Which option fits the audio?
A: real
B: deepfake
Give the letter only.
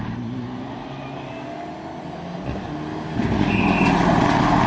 A